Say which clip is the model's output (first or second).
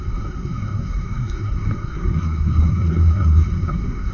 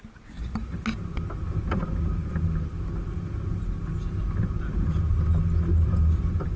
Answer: first